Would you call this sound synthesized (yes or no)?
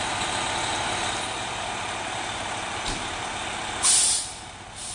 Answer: no